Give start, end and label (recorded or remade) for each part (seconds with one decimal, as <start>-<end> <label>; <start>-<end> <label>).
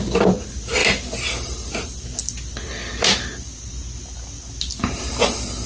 0.0-5.7 recorded